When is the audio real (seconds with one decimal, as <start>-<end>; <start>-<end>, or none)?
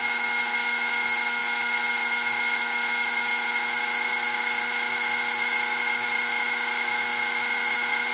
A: 0.0-8.1